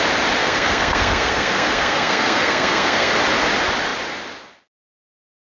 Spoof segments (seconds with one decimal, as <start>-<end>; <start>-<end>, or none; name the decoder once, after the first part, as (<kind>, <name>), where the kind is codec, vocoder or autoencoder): 0.4-3.1 (codec, SNAC)